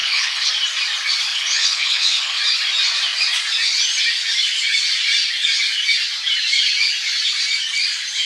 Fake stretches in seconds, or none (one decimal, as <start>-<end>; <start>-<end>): 0.0-0.5; 1.3-2.4